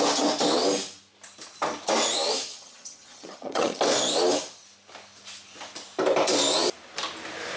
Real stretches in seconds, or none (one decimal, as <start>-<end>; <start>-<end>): 0.0-2.5; 3.8-7.6